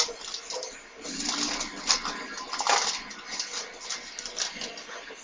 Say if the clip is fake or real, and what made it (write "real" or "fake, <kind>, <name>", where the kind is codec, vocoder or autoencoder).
real